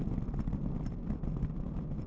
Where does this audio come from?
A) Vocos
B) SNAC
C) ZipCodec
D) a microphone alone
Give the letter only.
D